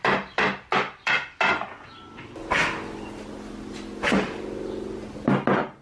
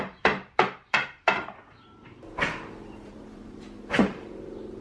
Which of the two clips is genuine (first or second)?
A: first